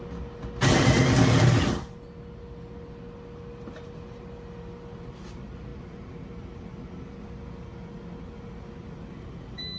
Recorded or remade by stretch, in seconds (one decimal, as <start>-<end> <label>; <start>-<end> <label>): 0.0-9.8 recorded